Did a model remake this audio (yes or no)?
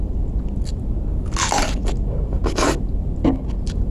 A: no